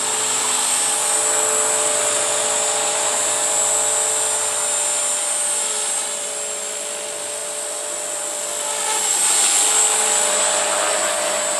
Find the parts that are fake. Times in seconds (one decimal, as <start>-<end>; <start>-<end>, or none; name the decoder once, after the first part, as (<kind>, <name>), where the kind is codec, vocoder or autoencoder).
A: none